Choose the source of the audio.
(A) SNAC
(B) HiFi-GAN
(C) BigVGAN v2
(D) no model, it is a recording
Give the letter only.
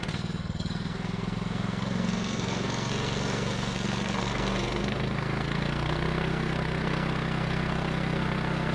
A